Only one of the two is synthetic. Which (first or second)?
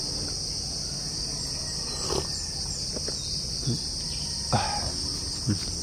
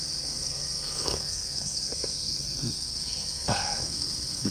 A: second